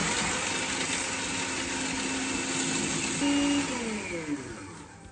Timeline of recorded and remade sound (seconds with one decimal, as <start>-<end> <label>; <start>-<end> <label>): 0.0-5.1 recorded